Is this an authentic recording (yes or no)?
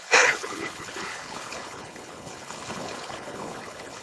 no